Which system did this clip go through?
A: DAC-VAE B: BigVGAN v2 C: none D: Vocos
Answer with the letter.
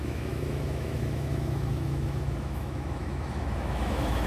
A